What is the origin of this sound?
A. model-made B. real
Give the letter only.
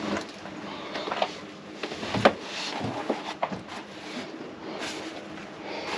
B